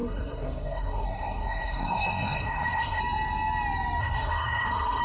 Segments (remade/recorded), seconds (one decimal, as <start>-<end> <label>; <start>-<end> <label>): 0.0-3.0 remade; 3.0-4.0 recorded; 4.0-5.0 remade